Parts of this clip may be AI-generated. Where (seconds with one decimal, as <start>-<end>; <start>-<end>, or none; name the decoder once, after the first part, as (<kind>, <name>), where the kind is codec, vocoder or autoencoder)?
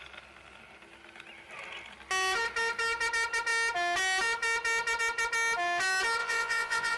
6.2-7.0 (vocoder, Vocos)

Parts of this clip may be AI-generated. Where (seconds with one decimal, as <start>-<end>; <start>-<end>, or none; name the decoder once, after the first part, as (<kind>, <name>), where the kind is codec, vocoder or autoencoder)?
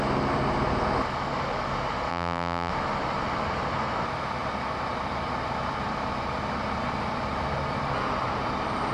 2.1-2.7 (vocoder, BigVGAN v2)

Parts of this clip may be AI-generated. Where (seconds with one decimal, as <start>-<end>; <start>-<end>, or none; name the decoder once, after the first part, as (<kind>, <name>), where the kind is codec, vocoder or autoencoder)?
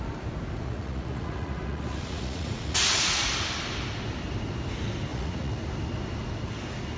0.6-3.3 (vocoder, Vocos); 5.1-5.6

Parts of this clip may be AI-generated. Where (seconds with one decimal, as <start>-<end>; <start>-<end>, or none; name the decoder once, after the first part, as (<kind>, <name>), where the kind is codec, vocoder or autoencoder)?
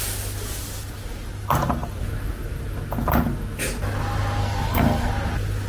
4.4-5.1 (codec, SNAC)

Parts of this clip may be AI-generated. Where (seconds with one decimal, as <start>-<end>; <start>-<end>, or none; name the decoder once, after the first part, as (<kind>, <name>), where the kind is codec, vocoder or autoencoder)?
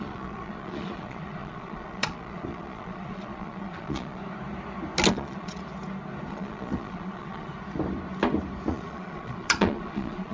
0.0-4.2 (vocoder, Vocos); 5.1-5.6; 6.3-7.5; 8.7-10.3